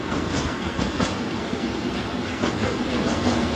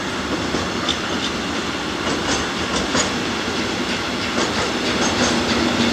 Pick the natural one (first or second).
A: second